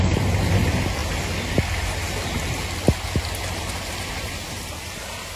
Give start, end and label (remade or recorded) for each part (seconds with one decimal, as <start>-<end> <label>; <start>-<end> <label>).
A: 0.0-4.4 recorded; 4.4-4.9 remade; 4.9-5.4 recorded